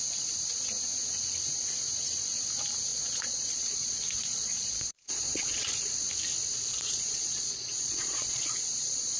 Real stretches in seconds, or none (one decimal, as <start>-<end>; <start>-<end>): 0.0-2.9; 5.7-6.7